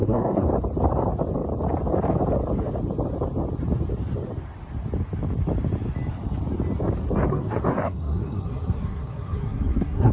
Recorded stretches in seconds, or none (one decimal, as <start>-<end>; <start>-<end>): 0.5-7.3